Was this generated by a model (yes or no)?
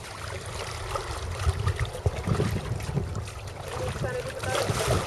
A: no